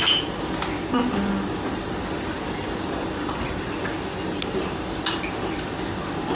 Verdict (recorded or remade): recorded